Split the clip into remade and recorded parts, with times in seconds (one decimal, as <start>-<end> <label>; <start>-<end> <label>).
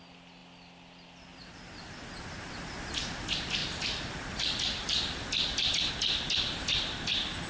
0.0-0.4 recorded; 0.4-2.9 remade; 2.9-3.6 recorded; 3.6-5.9 remade; 5.9-7.5 recorded